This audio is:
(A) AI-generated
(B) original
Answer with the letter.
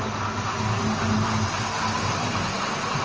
B